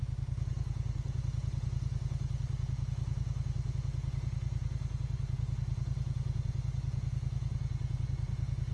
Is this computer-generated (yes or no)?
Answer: yes